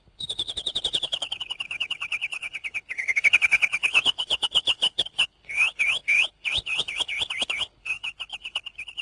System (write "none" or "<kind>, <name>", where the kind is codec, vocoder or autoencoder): codec, HILCodec